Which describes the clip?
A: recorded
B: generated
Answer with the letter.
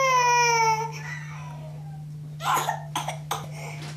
A